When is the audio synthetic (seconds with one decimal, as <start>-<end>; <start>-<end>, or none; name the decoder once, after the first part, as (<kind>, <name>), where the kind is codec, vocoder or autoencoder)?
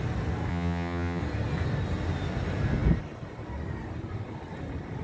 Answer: 0.5-1.2 (vocoder, HiFi-GAN)